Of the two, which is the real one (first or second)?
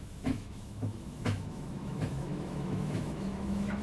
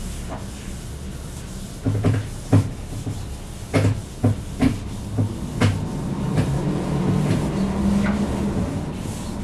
second